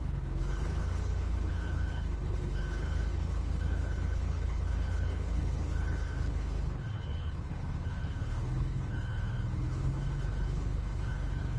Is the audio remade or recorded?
remade